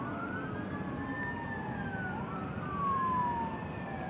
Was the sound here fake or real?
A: real